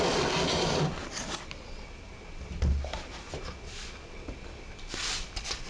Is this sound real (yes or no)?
yes